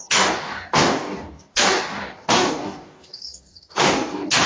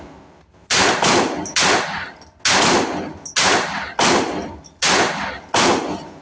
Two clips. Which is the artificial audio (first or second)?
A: first